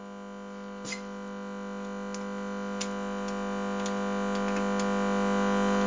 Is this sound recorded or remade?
recorded